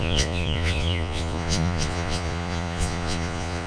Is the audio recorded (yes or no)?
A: no